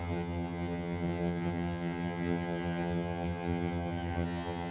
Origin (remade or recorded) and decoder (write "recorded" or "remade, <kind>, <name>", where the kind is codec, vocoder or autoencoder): remade, vocoder, HiFi-GAN